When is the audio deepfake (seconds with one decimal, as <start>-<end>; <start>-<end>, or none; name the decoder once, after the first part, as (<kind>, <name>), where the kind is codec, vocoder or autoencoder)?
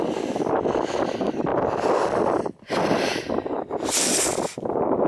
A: none